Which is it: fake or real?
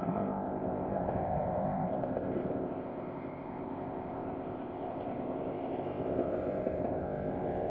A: fake